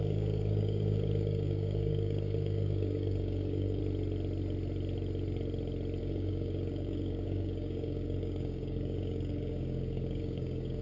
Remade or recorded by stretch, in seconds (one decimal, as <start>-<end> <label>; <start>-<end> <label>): 0.0-3.8 remade; 3.8-6.0 recorded; 6.0-10.8 remade